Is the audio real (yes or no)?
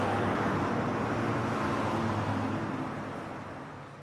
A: yes